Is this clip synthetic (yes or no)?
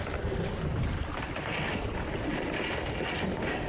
no